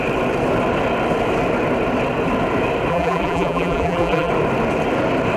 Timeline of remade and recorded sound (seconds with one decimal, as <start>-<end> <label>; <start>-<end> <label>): 0.0-2.9 recorded; 2.9-4.3 remade; 4.3-5.4 recorded